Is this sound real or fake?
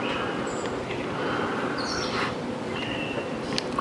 real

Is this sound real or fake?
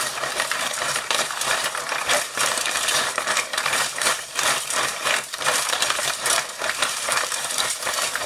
fake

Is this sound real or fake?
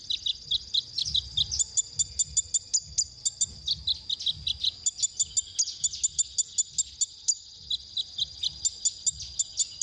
real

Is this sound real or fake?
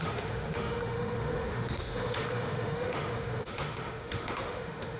fake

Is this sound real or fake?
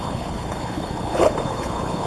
fake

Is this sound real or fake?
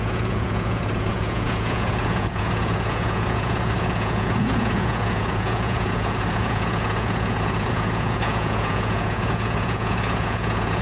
fake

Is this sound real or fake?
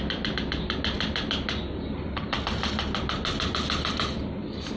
real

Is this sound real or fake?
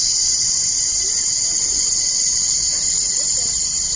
real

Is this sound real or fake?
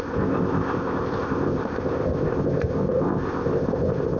fake